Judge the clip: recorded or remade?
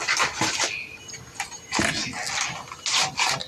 recorded